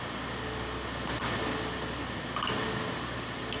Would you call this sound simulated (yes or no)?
no